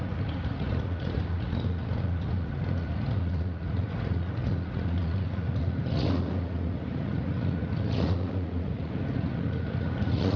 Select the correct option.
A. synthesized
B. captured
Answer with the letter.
A